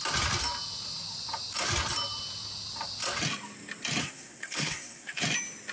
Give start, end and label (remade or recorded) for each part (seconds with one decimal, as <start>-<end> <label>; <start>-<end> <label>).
0.0-4.0 recorded; 4.0-5.2 remade; 5.2-5.7 recorded